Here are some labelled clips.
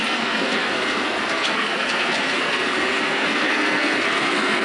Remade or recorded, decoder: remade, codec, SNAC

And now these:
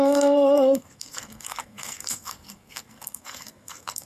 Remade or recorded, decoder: remade, codec, SNAC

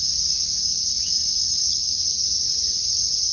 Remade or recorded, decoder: recorded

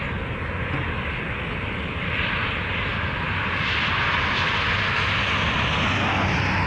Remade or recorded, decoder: recorded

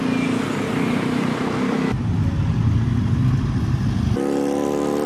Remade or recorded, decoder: recorded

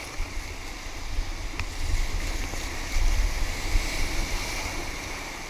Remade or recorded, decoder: recorded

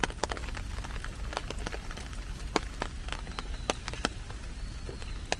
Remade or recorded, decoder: recorded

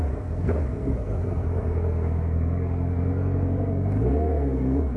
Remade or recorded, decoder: remade, codec, SNAC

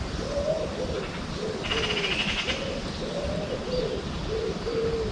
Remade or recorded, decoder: recorded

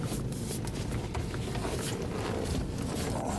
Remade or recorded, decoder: recorded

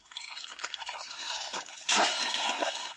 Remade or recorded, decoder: remade, codec, SNAC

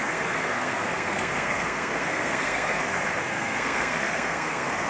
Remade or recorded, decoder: remade, codec, SNAC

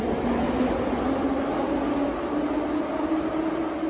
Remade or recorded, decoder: recorded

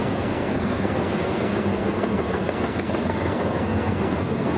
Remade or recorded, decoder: remade, codec, SNAC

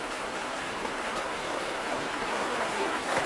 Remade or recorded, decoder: remade, codec, SNAC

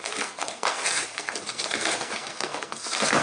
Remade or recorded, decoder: remade, codec, SNAC